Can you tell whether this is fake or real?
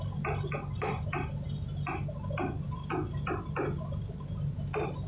real